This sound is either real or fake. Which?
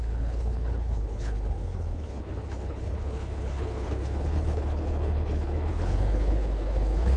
fake